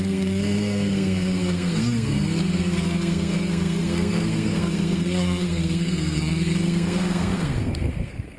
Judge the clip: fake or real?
fake